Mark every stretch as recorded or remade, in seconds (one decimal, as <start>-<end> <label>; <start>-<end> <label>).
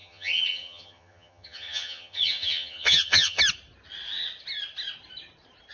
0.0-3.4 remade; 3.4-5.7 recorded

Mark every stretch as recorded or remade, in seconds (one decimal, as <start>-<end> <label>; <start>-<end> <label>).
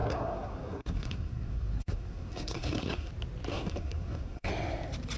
0.0-3.1 remade; 3.1-3.5 recorded; 3.5-4.5 remade; 4.5-5.2 recorded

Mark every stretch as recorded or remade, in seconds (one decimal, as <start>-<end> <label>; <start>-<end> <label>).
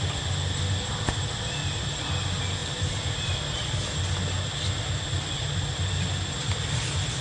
0.0-7.2 recorded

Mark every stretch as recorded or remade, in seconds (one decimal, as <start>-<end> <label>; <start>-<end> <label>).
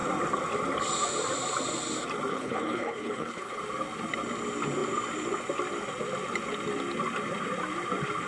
0.0-2.3 recorded; 2.3-3.6 remade; 3.6-8.3 recorded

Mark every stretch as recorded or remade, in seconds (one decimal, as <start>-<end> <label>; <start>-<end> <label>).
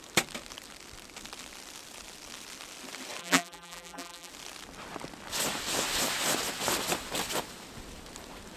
0.0-3.2 recorded; 3.2-4.3 remade; 4.3-8.6 recorded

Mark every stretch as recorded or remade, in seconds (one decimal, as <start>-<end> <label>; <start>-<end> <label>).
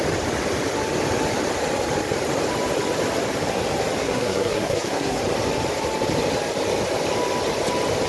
0.0-4.0 recorded; 4.0-5.2 remade; 5.2-8.1 recorded